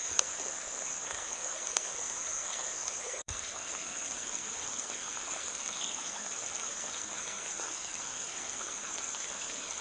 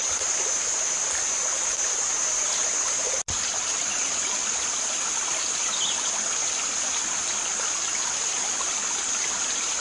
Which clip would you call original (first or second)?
second